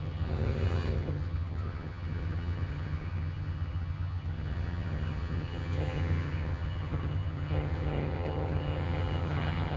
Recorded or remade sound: remade